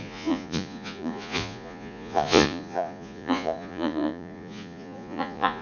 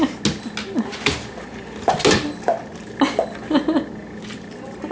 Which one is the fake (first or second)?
first